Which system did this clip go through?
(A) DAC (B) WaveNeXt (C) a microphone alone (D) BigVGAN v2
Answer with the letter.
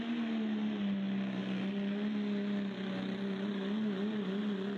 C